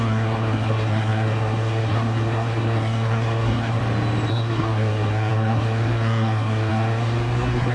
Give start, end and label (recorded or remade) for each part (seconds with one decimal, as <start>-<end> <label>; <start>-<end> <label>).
0.0-3.8 remade; 3.8-4.3 recorded; 4.3-7.7 remade